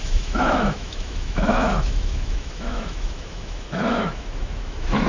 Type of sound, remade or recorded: remade